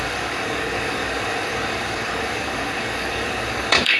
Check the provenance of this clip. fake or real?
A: fake